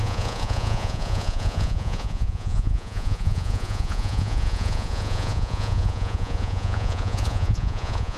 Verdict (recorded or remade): remade